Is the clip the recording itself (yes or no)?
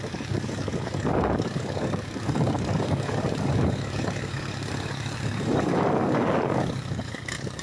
no